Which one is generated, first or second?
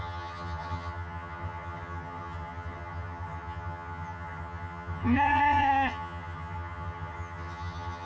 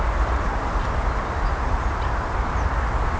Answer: first